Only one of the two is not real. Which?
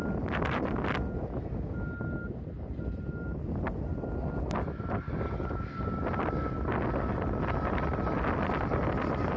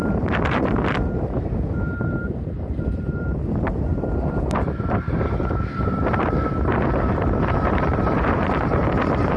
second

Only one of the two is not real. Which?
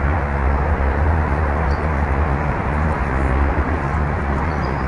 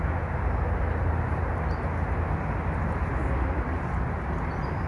first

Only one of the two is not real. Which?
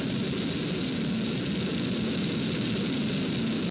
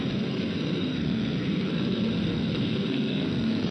second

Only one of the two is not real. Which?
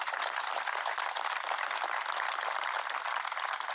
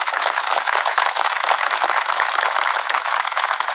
second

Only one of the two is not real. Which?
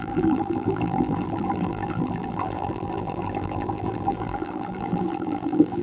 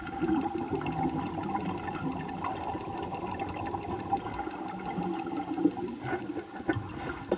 first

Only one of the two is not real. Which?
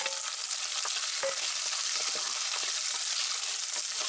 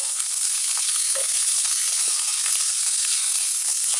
second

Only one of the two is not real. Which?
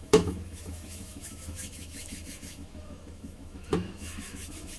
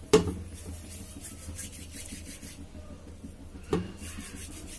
first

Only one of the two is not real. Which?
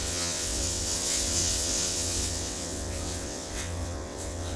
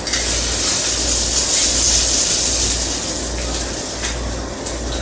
first